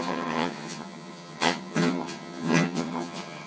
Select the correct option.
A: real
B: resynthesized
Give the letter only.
B